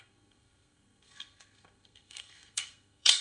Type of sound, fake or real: fake